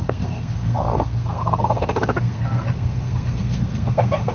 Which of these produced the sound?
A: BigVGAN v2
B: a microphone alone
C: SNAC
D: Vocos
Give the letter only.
C